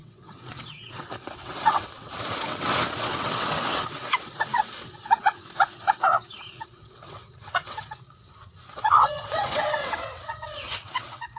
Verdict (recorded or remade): remade